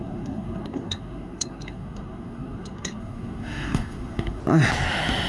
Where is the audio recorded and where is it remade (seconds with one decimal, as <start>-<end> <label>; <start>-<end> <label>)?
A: 0.0-4.4 remade; 4.4-5.3 recorded